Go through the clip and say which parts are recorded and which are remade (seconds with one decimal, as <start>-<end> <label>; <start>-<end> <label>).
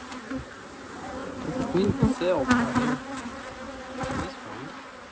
0.0-5.1 recorded